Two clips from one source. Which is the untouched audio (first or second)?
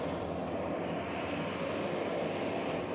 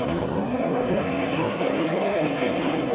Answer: first